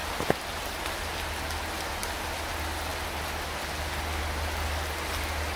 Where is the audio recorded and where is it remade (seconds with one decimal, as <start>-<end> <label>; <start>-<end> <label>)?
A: 0.0-0.8 remade; 0.8-2.0 recorded; 2.0-2.5 remade; 2.5-5.6 recorded